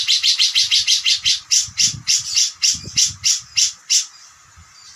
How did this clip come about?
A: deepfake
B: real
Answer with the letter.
B